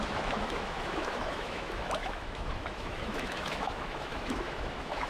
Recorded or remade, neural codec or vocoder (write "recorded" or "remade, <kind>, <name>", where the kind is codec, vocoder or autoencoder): remade, autoencoder, DAC-VAE